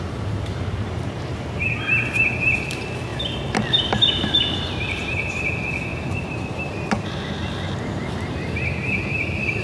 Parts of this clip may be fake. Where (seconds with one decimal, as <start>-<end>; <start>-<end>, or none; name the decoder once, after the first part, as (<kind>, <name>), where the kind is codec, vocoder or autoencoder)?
0.0-3.1 (vocoder, BigVGAN v2); 3.8-9.6